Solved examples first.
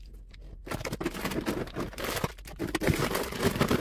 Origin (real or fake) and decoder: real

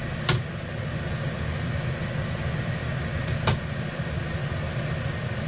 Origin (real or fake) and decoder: real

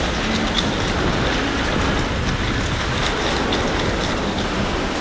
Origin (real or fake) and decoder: real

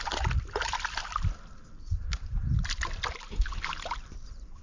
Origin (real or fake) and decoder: real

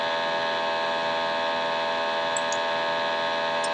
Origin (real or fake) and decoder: real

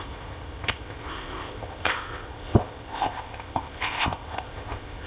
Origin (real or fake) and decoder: fake, codec, ZipCodec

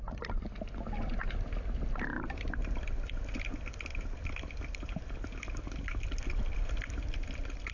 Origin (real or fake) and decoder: real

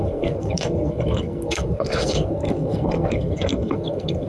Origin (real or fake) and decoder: fake, codec, SNAC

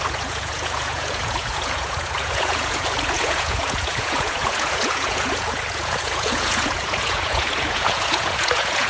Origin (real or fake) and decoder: fake, vocoder, Vocos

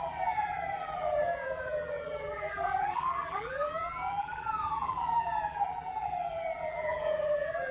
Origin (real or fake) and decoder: fake, vocoder, BigVGAN v2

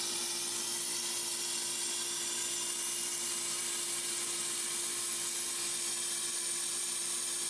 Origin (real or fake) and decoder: real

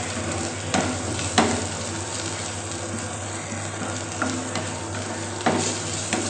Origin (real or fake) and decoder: real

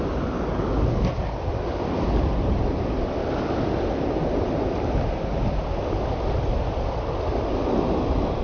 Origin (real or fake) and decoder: real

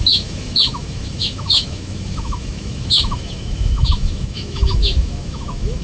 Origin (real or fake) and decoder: fake, autoencoder, DAC-VAE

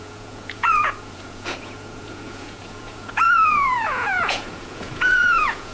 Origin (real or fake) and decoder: fake, vocoder, Vocos